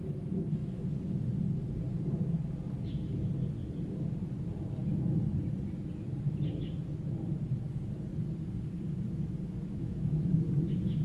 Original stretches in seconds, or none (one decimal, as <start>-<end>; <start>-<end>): 0.0-9.7; 10.3-11.0